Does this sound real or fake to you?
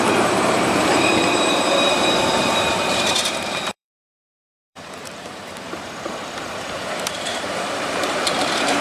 fake